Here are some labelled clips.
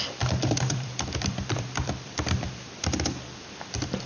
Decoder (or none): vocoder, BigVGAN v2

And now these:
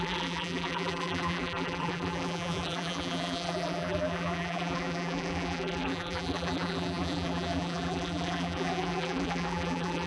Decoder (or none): vocoder, BigVGAN v2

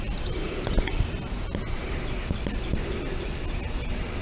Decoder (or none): none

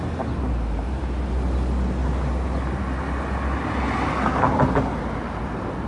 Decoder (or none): none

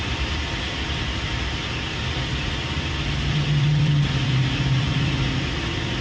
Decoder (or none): vocoder, BigVGAN v2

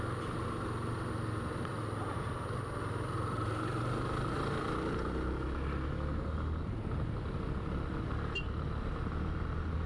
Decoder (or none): none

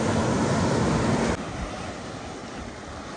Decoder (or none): none